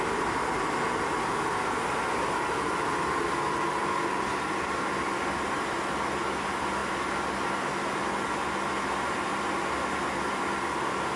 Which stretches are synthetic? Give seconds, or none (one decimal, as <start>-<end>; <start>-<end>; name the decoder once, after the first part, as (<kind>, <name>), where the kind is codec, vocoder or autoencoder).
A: none